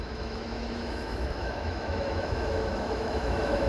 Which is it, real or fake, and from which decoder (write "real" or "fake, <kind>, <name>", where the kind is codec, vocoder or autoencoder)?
fake, autoencoder, DAC-VAE